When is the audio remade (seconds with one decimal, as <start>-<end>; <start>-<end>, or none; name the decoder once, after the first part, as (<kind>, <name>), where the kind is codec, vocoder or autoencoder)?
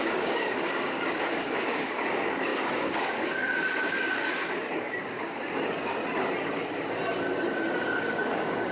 0.0-6.0 (codec, DAC); 7.7-8.7